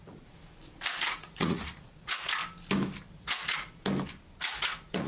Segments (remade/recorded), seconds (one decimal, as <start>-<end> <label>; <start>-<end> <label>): 0.0-0.4 remade; 0.4-1.0 recorded; 1.0-2.4 remade; 2.4-3.1 recorded; 3.1-3.7 remade; 3.7-4.4 recorded; 4.4-5.1 remade